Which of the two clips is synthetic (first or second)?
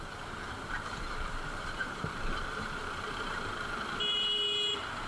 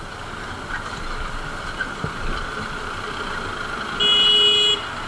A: first